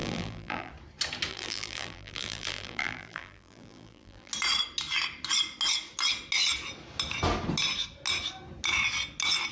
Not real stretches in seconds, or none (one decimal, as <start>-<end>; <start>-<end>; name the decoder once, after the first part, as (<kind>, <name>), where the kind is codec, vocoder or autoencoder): 0.0-0.7 (vocoder, BigVGAN v2); 1.3-4.3